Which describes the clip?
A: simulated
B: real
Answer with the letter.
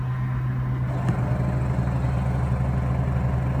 B